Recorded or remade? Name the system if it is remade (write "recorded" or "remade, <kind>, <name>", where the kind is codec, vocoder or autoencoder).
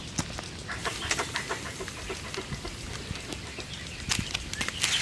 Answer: recorded